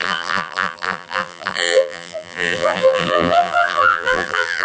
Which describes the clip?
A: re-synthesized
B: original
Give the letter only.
A